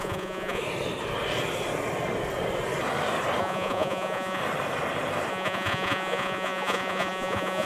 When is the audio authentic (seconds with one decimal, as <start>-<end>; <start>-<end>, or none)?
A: 0.6-3.4; 4.4-5.3